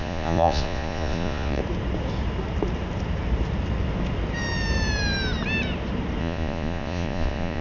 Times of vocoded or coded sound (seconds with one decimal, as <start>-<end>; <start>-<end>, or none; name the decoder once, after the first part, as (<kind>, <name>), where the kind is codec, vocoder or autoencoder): 0.0-1.6 (vocoder, Vocos); 6.2-7.6